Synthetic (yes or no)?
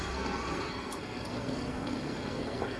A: yes